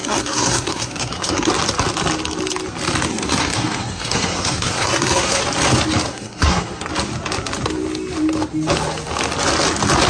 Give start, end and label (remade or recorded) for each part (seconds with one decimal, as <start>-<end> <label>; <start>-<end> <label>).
0.0-1.5 remade; 1.5-3.1 recorded; 3.1-5.4 remade; 5.4-6.1 recorded; 6.1-6.9 remade; 6.9-10.1 recorded